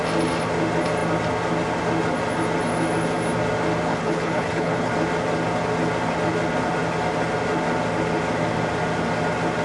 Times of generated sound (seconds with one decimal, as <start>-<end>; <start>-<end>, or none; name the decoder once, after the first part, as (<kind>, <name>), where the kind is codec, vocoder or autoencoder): 3.9-4.9 (codec, HILCodec)